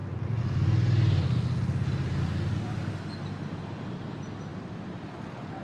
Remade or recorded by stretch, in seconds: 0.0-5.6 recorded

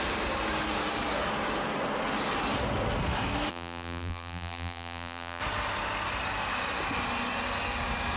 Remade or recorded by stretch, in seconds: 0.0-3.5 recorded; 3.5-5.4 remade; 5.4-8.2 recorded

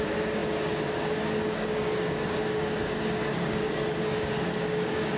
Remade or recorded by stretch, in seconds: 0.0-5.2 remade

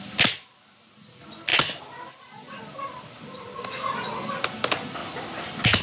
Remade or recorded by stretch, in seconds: 0.0-5.8 recorded